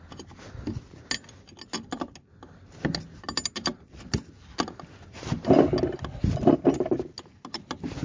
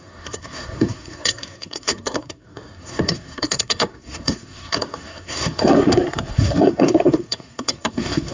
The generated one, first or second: second